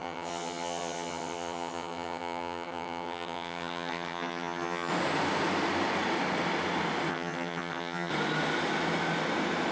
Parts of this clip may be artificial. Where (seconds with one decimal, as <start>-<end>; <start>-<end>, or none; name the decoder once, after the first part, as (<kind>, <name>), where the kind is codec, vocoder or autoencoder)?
0.0-4.9 (vocoder, HiFi-GAN); 7.1-8.1